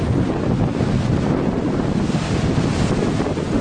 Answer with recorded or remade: recorded